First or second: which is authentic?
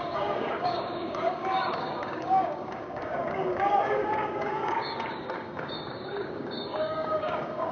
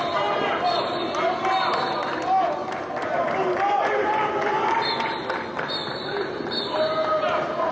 second